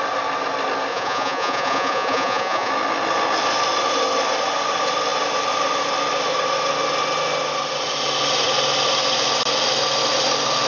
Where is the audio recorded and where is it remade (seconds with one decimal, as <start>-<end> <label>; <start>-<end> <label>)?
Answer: 0.0-0.9 recorded; 0.9-2.7 remade; 2.7-10.7 recorded